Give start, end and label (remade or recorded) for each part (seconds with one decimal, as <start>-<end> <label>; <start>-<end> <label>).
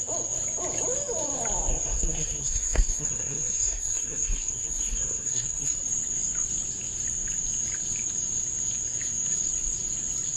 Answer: 0.0-1.7 recorded; 1.7-5.7 remade; 5.7-10.4 recorded